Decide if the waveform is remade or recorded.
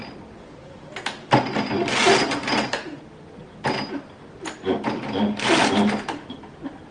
recorded